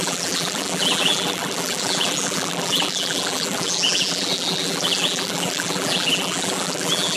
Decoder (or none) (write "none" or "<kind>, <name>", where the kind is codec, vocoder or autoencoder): vocoder, BigVGAN v2